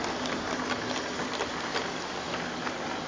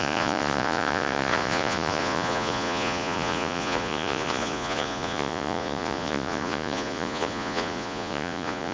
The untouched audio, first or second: first